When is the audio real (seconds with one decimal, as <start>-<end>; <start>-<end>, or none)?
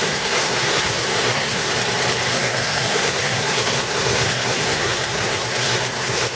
1.7-2.3